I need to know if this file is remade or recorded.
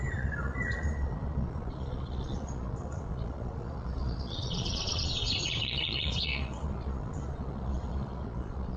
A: remade